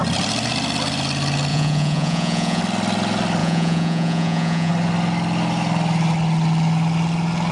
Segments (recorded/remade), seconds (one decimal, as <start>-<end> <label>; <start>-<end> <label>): 0.0-1.5 recorded; 1.5-2.6 remade; 2.6-3.4 recorded; 3.4-4.7 remade; 4.7-7.5 recorded